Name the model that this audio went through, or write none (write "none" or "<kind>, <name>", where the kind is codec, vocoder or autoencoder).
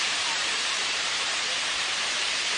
vocoder, BigVGAN v2